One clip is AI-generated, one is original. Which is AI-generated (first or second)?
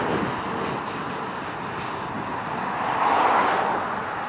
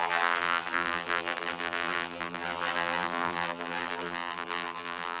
second